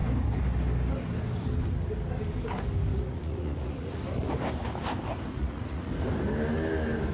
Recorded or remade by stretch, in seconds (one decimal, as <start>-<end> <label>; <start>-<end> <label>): 0.0-2.9 recorded; 2.9-4.0 remade; 4.0-5.4 recorded; 5.4-5.9 remade; 5.9-7.1 recorded